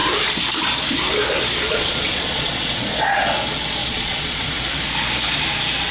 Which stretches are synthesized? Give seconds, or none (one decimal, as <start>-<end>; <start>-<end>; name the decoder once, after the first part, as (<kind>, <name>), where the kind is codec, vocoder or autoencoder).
1.7-2.8 (vocoder, Vocos); 3.8-4.6